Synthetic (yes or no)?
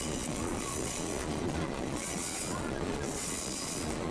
yes